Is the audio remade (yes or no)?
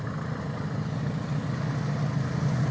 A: no